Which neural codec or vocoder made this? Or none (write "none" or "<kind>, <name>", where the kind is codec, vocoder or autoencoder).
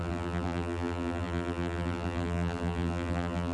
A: vocoder, BigVGAN v2